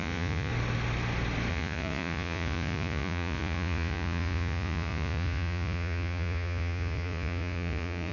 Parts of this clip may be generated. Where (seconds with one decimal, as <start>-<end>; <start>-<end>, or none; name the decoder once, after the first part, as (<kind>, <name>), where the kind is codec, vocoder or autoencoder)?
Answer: 0.0-0.5 (vocoder, Vocos); 1.5-8.1